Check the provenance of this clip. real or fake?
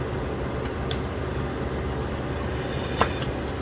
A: real